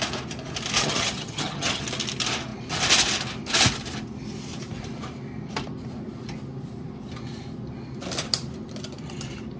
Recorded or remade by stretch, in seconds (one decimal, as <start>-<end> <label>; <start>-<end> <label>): 0.0-0.8 recorded; 0.8-1.8 remade; 1.8-9.6 recorded